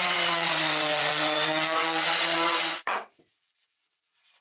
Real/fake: fake